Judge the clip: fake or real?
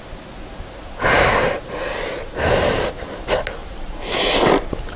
real